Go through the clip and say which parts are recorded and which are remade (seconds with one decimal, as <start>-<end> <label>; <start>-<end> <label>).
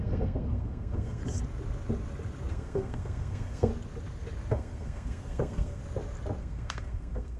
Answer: 0.0-1.2 remade; 1.2-2.5 recorded; 2.5-3.7 remade; 3.7-4.5 recorded; 4.5-5.8 remade; 5.8-6.4 recorded; 6.4-7.4 remade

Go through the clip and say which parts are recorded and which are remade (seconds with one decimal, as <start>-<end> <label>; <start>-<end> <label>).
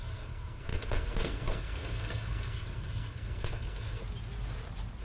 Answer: 0.0-4.0 remade; 4.0-5.0 recorded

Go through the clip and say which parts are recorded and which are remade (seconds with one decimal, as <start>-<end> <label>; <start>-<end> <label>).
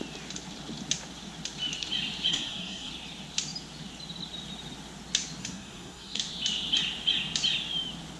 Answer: 0.0-2.3 recorded; 2.3-2.9 remade; 2.9-5.4 recorded; 5.4-6.2 remade; 6.2-8.2 recorded